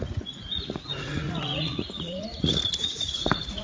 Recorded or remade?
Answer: remade